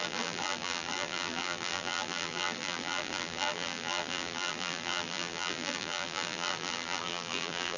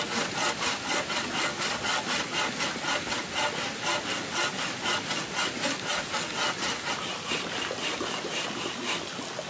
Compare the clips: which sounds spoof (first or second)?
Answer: first